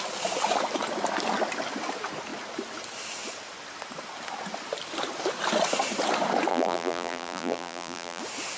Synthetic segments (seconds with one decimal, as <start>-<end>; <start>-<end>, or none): 6.5-8.2

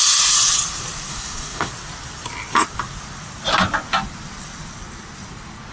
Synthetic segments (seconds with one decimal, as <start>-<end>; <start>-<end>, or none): 1.1-1.7

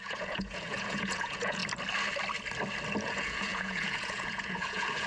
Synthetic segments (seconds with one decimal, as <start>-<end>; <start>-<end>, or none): 0.0-1.6; 3.0-5.1

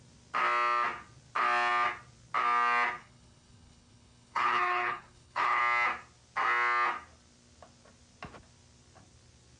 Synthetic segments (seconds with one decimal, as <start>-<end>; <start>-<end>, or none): 3.0-5.6

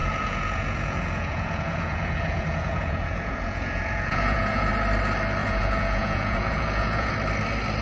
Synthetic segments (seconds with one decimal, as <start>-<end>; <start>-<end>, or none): 0.0-4.7; 5.4-7.1

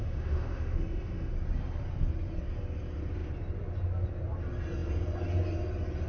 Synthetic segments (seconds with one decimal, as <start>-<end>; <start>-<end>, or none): 0.0-1.3